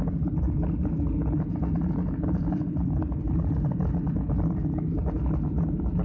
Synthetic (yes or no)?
no